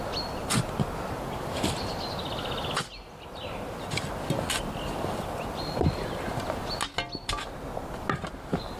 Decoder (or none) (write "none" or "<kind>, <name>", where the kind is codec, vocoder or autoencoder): none